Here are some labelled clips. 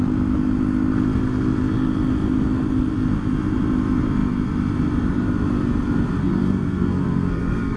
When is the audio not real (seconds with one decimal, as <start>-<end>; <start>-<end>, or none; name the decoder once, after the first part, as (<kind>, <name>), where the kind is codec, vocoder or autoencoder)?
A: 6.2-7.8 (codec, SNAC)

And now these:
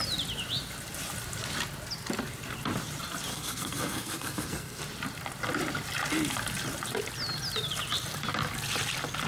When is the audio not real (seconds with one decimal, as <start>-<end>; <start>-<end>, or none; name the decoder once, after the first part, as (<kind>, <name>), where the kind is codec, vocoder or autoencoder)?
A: 3.3-4.8 (codec, SNAC)

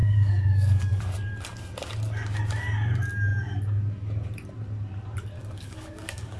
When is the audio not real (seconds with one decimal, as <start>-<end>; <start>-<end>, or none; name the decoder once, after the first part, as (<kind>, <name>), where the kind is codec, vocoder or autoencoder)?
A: 0.0-1.0 (codec, DAC); 5.4-6.4

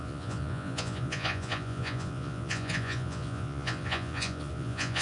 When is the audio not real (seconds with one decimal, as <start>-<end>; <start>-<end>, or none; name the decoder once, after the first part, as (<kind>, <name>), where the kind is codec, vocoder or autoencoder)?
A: 0.0-5.0 (vocoder, Vocos)

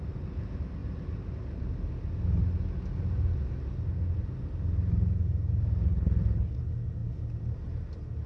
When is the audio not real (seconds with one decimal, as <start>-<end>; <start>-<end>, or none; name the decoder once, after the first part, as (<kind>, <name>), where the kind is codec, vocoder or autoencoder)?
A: 5.9-6.6 (codec, HILCodec)

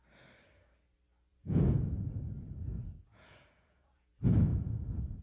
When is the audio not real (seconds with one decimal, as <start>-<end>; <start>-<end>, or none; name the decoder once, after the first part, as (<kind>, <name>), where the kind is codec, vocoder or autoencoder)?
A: 1.3-2.1 (vocoder, Vocos); 2.7-4.1; 4.5-5.2

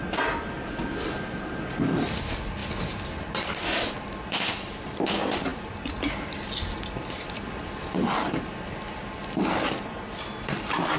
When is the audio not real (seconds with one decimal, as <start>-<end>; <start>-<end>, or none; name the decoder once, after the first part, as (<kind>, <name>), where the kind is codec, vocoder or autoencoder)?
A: 1.3-2.6 (vocoder, BigVGAN v2); 3.2-5.5; 6.3-11.0

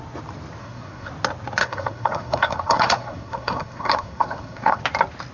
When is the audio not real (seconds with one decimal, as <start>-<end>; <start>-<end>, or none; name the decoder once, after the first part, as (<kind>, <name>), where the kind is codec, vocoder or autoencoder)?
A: 0.6-1.1 (codec, SNAC); 1.6-4.8